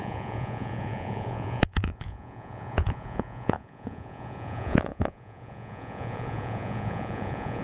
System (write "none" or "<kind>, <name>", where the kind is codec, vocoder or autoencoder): vocoder, Vocos